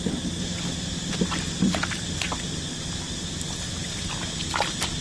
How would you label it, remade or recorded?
recorded